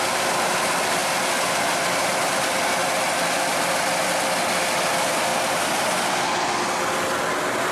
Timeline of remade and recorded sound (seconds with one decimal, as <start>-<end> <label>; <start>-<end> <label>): 0.0-7.7 recorded